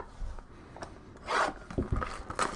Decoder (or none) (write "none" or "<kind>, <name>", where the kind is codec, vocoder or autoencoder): none